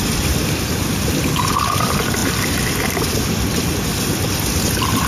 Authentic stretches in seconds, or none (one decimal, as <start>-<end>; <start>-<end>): 0.0-5.1